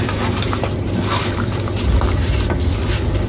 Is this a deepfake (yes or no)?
no